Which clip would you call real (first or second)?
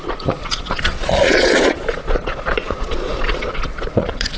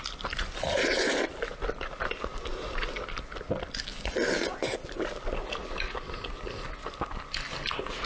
second